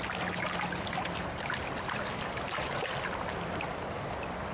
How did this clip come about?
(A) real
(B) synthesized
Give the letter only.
A